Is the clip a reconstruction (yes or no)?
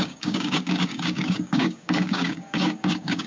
yes